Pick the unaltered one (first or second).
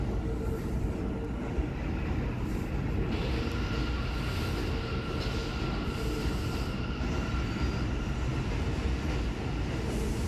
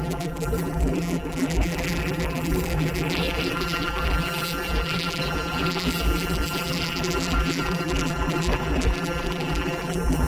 first